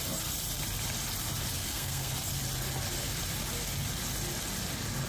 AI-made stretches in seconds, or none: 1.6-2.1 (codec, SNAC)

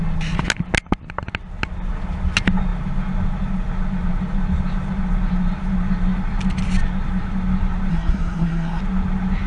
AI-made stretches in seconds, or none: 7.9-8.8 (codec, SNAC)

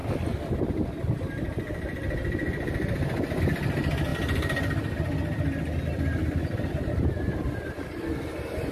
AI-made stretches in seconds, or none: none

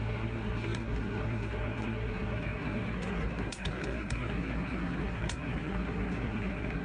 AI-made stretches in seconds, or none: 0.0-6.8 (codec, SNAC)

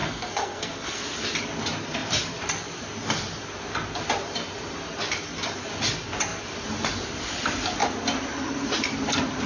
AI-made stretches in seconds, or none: 0.0-1.0 (codec, SNAC)